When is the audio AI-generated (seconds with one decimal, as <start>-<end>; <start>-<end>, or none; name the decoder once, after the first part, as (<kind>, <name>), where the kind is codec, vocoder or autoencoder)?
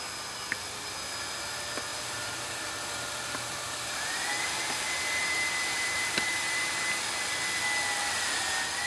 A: 1.9-6.9 (vocoder, BigVGAN v2)